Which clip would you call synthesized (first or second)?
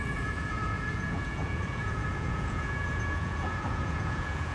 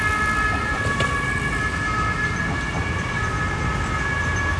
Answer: first